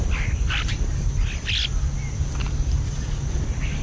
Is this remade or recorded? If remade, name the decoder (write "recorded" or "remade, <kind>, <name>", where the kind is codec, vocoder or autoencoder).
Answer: recorded